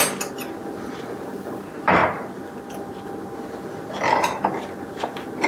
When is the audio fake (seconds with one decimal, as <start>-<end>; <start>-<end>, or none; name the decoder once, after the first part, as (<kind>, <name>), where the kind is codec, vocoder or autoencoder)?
none